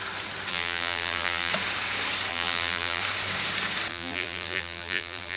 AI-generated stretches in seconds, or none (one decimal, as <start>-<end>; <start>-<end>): 0.5-1.5; 2.3-3.0; 3.9-5.4